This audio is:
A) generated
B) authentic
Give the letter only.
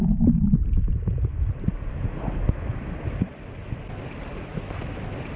B